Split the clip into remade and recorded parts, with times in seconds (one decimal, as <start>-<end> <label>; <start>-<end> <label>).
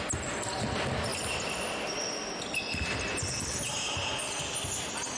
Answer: 0.0-5.2 recorded